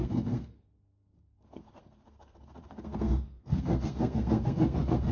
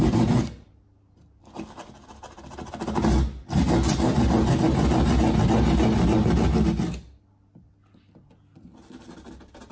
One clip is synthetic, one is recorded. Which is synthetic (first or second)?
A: first